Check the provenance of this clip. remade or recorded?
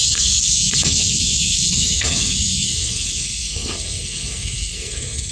remade